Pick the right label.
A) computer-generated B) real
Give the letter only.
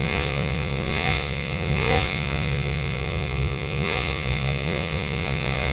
A